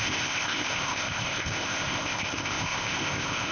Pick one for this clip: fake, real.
fake